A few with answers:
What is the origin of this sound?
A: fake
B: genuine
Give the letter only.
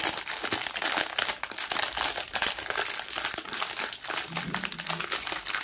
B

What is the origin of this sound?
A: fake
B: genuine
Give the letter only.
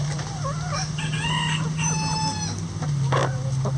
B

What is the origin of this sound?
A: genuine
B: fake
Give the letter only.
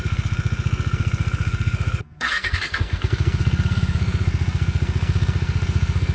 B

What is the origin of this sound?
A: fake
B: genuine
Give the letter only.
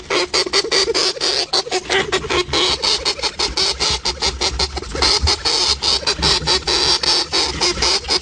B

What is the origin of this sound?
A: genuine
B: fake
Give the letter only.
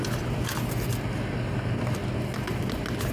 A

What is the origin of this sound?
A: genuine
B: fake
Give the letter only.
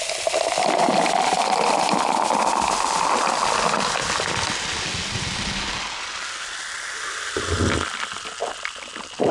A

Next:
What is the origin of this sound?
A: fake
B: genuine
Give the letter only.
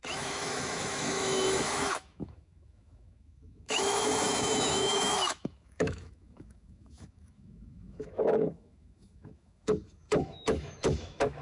A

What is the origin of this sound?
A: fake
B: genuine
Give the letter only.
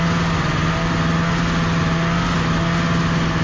B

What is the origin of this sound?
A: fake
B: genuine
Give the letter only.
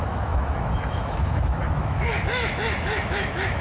A